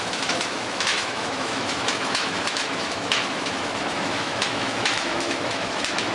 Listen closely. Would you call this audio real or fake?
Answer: fake